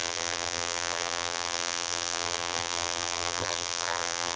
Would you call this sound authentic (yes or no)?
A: no